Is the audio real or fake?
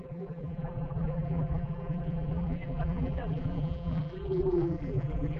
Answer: fake